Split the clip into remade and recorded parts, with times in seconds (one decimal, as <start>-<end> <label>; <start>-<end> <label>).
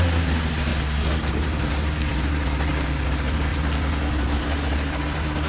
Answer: 0.0-0.7 remade; 0.7-1.3 recorded; 1.3-3.5 remade; 3.5-4.1 recorded; 4.1-5.5 remade